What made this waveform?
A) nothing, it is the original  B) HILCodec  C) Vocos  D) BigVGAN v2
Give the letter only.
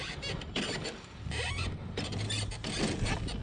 A